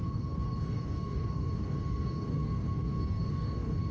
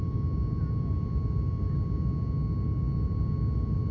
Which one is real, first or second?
second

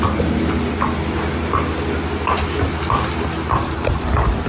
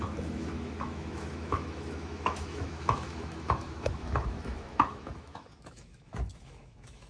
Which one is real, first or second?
first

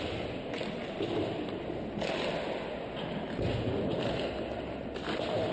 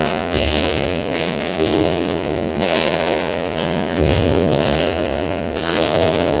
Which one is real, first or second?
first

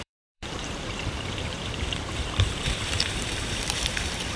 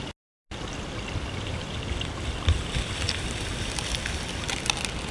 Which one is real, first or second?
second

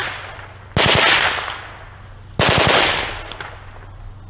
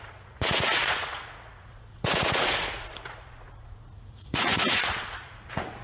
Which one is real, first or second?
first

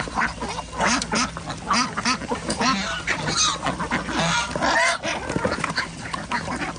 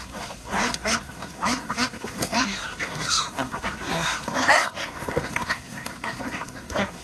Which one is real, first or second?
first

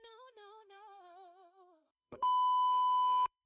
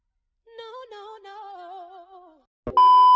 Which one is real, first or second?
second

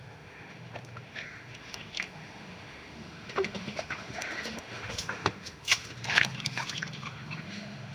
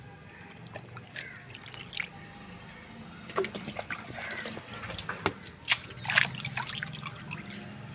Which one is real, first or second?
second